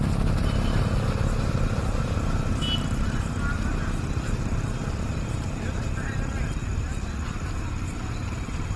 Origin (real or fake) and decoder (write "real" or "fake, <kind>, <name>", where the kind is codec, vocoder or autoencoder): real